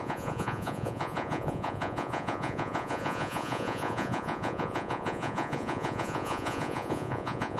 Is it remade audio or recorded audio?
remade